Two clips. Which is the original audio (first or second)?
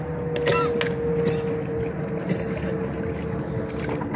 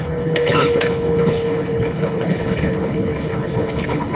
first